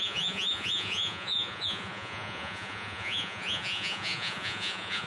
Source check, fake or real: fake